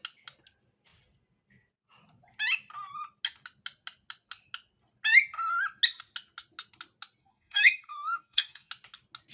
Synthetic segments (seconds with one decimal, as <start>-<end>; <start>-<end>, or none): 7.2-8.7